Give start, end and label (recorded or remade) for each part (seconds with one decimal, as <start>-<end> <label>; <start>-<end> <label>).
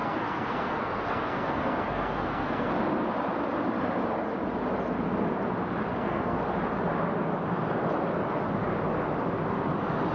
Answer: 0.0-2.7 remade; 2.7-5.9 recorded; 5.9-6.4 remade; 6.4-10.1 recorded